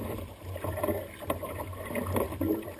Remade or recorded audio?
remade